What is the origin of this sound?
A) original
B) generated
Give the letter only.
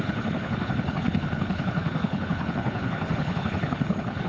B